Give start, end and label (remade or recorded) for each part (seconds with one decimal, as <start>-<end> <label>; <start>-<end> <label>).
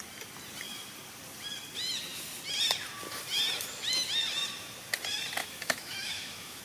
0.0-5.4 recorded; 5.4-6.6 remade